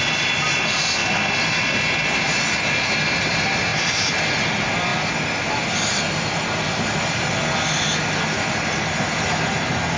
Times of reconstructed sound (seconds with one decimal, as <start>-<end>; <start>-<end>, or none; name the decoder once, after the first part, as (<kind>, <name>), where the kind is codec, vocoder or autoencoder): none